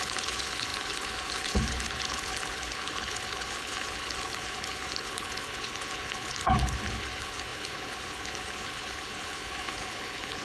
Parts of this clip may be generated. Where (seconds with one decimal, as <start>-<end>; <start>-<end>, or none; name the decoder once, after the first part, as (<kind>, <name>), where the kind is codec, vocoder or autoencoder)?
0.0-10.4 (codec, HILCodec)